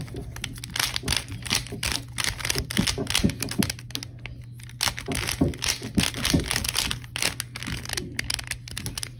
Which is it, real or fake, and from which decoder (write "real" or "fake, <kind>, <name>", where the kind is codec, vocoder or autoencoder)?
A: real